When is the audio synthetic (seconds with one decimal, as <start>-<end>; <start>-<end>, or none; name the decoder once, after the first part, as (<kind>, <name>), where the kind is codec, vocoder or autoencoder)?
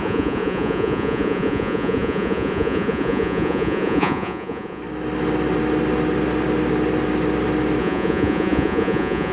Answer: 0.0-4.8 (vocoder, Vocos); 7.8-9.3